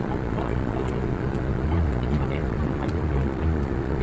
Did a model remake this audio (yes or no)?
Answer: yes